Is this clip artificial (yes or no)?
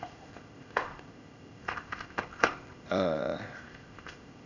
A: yes